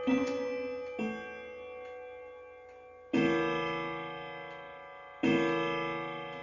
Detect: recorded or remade recorded